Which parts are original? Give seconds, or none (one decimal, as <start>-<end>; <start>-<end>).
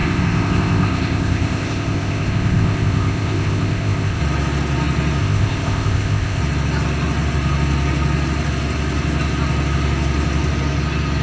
4.2-5.2; 6.4-11.2